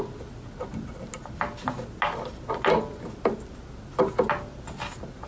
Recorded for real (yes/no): yes